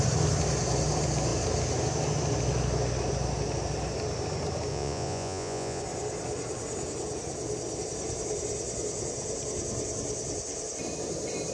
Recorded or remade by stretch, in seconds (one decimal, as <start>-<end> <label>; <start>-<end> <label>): 0.0-4.7 recorded; 4.7-5.8 remade; 5.8-11.5 recorded